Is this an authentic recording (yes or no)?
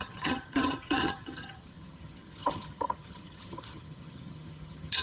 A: no